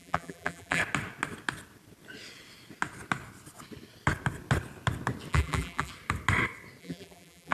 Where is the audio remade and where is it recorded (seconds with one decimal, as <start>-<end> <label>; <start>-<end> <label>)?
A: 0.0-0.8 remade; 0.8-5.3 recorded; 5.3-5.9 remade; 5.9-6.8 recorded; 6.8-7.5 remade

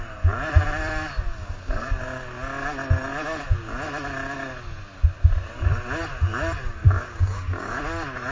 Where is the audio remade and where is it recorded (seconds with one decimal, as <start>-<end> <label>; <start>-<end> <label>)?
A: 0.0-1.3 recorded; 1.3-2.0 remade; 2.0-6.8 recorded; 6.8-7.8 remade; 7.8-8.3 recorded

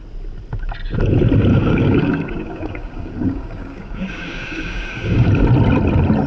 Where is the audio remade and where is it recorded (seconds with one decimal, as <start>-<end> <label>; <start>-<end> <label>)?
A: 0.0-1.5 recorded; 1.5-5.3 remade; 5.3-6.3 recorded